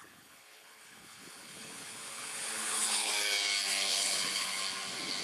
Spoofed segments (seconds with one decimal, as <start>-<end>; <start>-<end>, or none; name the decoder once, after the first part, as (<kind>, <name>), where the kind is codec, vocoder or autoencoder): 0.0-3.1 (codec, HILCodec); 3.9-4.6